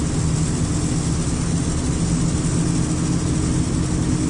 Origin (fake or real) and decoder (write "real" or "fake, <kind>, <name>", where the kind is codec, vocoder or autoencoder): real